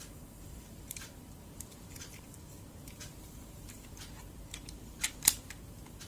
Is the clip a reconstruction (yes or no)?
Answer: yes